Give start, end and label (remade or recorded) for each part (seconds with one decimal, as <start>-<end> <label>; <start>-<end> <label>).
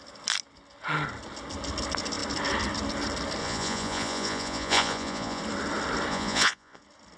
0.0-3.4 recorded; 3.4-5.4 remade; 5.4-6.1 recorded; 6.1-6.8 remade; 6.8-7.2 recorded